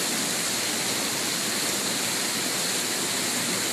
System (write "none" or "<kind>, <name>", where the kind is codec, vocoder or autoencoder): none